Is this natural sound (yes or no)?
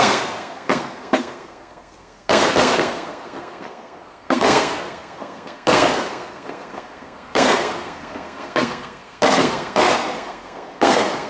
no